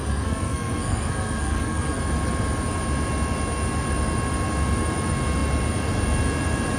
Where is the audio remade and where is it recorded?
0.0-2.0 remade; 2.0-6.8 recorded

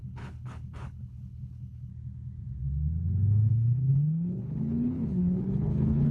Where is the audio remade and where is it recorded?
0.0-1.9 remade; 1.9-3.5 recorded; 3.5-6.1 remade

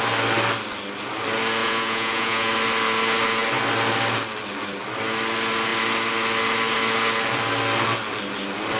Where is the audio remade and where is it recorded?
0.0-1.6 recorded; 1.6-2.5 remade; 2.5-8.8 recorded